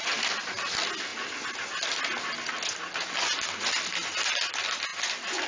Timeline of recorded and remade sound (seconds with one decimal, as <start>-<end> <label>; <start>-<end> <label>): 0.0-5.5 recorded